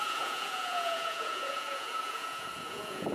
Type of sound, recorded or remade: remade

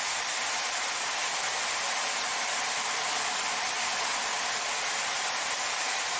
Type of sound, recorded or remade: remade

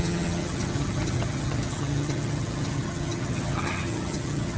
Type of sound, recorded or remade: remade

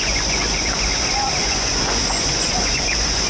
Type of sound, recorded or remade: remade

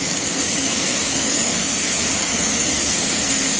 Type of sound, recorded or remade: remade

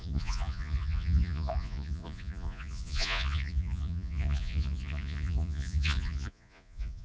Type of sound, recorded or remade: remade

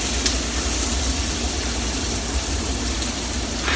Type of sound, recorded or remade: recorded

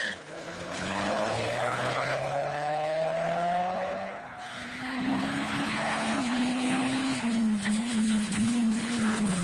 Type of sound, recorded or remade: remade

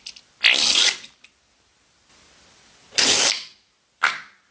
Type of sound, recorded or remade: recorded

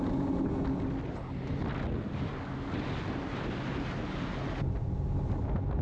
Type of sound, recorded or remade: recorded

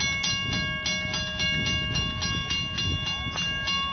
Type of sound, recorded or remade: recorded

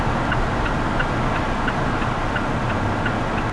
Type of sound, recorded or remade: recorded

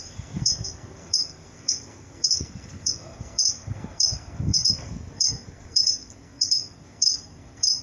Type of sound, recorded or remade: remade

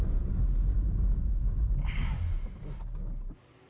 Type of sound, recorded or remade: recorded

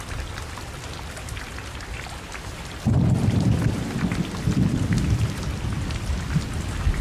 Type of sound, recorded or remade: recorded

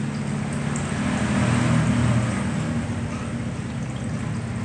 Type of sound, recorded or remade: recorded